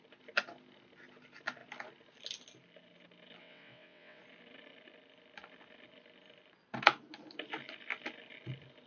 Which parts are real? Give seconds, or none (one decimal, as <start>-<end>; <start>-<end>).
0.0-3.4; 4.2-8.9